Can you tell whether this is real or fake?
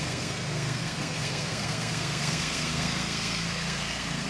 fake